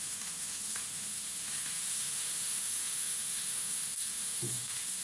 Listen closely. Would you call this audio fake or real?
fake